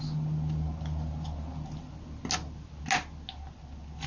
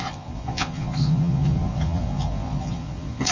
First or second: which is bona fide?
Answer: first